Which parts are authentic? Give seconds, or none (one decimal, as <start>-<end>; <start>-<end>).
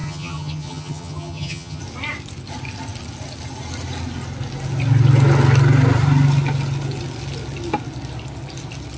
1.8-9.0